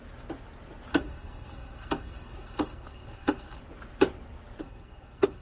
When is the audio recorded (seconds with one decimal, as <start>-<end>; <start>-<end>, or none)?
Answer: 0.0-0.9; 3.6-4.6